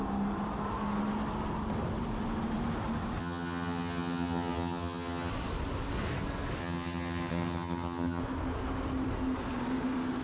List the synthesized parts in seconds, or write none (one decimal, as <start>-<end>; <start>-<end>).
3.2-5.3; 6.6-8.2